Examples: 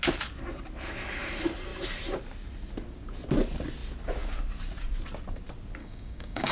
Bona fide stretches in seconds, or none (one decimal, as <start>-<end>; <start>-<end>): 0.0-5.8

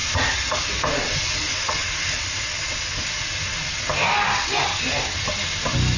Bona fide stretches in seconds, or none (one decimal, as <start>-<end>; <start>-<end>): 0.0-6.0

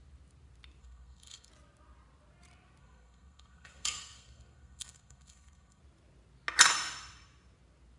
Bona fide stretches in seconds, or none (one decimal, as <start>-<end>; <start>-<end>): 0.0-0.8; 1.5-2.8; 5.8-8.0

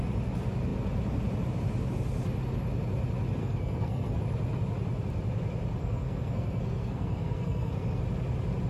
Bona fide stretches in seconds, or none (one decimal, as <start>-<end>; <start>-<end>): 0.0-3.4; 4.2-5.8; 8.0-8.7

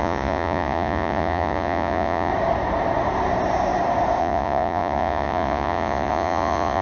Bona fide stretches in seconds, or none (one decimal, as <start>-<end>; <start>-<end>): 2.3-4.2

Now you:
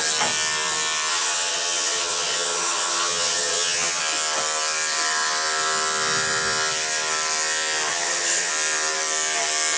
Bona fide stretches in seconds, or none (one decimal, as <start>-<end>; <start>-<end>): 0.0-1.1; 4.0-7.9; 8.5-9.8

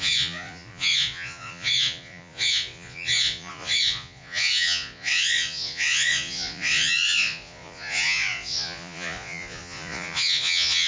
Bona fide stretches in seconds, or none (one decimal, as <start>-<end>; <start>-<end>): none

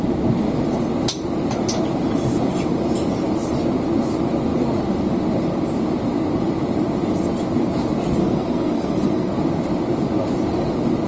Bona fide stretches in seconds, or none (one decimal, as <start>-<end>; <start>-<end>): 0.0-8.2; 9.3-11.1